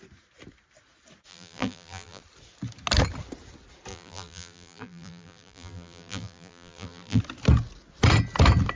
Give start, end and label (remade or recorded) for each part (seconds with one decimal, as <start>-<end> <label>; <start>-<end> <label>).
0.0-1.3 recorded; 1.3-2.2 remade; 2.2-3.9 recorded; 3.9-7.2 remade; 7.2-8.8 recorded